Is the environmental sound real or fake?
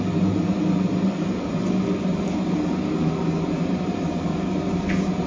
fake